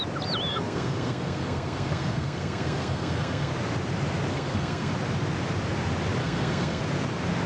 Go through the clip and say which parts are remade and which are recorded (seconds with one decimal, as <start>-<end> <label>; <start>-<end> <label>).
0.0-0.5 recorded; 0.5-3.5 remade; 3.5-4.3 recorded; 4.3-4.9 remade; 4.9-6.2 recorded; 6.2-6.8 remade; 6.8-7.5 recorded

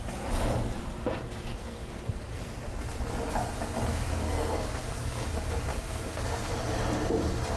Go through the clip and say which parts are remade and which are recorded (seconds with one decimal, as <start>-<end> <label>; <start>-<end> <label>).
0.0-1.5 recorded; 1.5-2.7 remade; 2.7-3.9 recorded; 3.9-5.3 remade; 5.3-5.7 recorded; 5.7-6.5 remade; 6.5-7.6 recorded